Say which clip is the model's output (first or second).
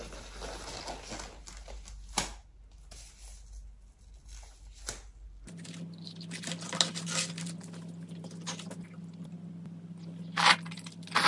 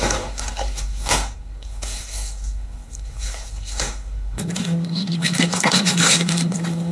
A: second